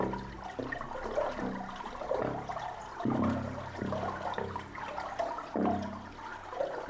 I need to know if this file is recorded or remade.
recorded